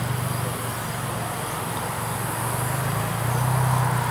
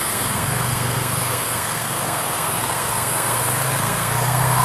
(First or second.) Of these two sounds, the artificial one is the second